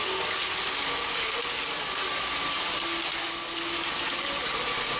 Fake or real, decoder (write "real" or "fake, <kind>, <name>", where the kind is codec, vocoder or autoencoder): real